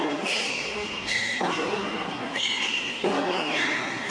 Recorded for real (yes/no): no